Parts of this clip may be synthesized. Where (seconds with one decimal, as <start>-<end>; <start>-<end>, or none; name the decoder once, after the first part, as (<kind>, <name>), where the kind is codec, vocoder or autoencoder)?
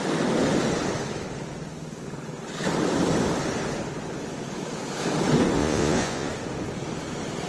5.6-6.3 (vocoder, Vocos)